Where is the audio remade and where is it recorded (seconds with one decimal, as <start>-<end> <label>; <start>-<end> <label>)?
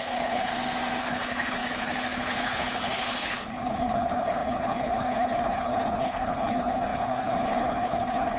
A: 0.0-0.5 remade; 0.5-1.0 recorded; 1.0-8.4 remade